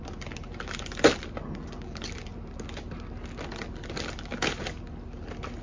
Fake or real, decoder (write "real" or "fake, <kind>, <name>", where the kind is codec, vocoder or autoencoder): real